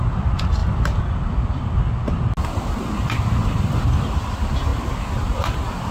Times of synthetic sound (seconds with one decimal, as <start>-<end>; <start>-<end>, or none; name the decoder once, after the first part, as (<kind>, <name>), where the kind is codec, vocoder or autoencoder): none